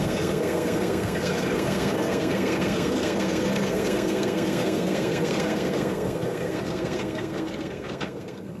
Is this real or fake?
fake